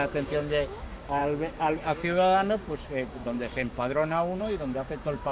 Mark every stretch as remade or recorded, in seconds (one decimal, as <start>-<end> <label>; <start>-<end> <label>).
0.0-5.3 remade